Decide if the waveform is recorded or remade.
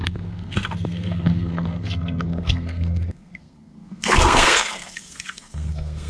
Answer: remade